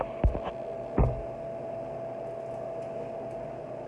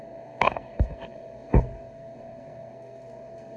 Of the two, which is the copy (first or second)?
second